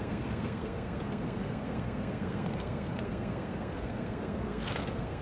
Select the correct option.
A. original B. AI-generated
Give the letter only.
B